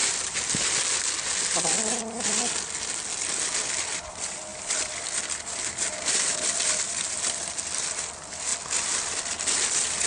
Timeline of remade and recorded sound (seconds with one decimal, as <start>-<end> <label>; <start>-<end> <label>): 0.0-3.8 recorded; 3.8-8.5 remade; 8.5-9.2 recorded; 9.2-10.1 remade